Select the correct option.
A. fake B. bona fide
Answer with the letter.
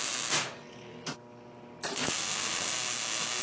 B